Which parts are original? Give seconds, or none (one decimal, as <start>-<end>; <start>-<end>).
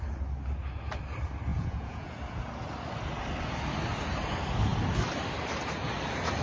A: 0.0-1.5; 2.1-6.4